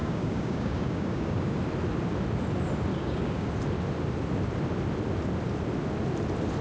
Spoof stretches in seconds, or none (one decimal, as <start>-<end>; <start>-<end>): 0.0-1.6; 2.9-3.5